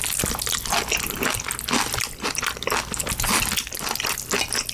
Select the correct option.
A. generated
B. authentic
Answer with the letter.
B